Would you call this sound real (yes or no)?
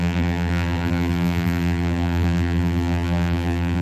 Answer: no